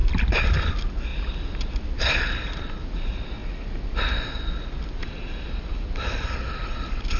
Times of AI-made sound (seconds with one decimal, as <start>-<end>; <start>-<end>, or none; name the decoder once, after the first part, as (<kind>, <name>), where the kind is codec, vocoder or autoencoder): none

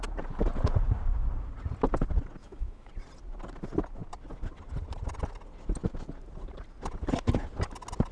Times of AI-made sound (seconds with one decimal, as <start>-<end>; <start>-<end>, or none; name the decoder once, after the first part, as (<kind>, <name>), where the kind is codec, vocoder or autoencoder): 2.4-2.9 (autoencoder, DAC-VAE)

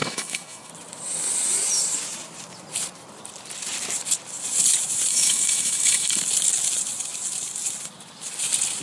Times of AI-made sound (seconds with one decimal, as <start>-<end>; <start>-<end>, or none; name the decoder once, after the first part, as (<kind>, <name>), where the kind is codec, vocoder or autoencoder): 0.0-0.7 (autoencoder, DAC-VAE); 5.1-6.2

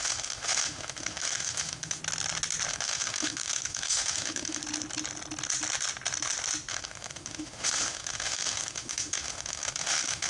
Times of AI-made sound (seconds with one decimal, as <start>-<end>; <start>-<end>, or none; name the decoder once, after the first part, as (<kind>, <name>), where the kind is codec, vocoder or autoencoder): 0.0-2.0 (autoencoder, DAC-VAE); 2.7-4.6; 6.7-10.3

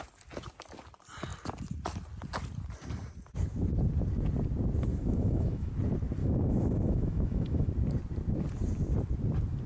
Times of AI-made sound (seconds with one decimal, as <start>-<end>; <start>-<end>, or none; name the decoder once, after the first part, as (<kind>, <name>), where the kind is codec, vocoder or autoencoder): 4.9-5.7 (autoencoder, DAC-VAE); 6.2-7.7